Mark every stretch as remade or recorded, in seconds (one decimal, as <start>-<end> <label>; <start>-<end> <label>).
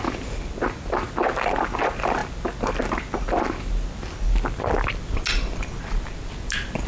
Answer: 0.0-6.9 recorded